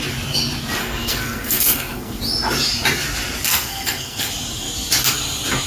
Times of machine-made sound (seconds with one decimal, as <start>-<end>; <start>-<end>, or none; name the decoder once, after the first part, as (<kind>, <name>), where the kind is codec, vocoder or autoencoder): 0.8-2.2 (codec, SNAC); 3.5-4.3